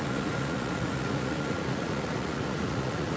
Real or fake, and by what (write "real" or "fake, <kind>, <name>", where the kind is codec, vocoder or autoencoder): fake, vocoder, Vocos